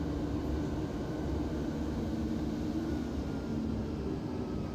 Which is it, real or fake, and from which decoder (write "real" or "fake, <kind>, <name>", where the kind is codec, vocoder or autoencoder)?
real